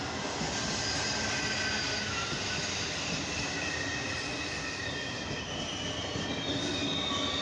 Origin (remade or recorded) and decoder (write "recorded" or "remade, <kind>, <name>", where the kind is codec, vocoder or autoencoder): recorded